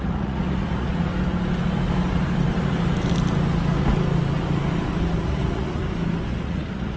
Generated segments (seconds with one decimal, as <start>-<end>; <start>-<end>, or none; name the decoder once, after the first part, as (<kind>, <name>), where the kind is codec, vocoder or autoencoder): 0.0-1.1 (vocoder, Vocos); 5.3-5.8; 6.3-7.0

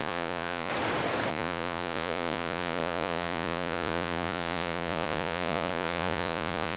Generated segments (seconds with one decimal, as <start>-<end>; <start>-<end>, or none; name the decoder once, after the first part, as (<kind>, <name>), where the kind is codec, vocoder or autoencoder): 0.0-0.7 (vocoder, Vocos); 1.3-6.8

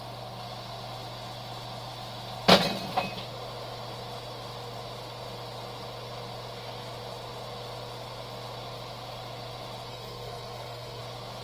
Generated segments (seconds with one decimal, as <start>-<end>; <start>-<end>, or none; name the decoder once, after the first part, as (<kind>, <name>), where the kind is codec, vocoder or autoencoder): 9.9-11.0 (codec, SNAC)

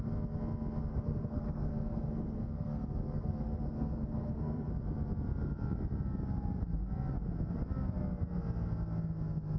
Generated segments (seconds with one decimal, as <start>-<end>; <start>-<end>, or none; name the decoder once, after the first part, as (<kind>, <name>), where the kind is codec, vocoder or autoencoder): 0.9-4.7 (codec, SNAC)